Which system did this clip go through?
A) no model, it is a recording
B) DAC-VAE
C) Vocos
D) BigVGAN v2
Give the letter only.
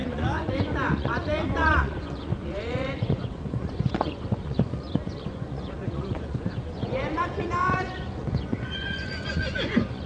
C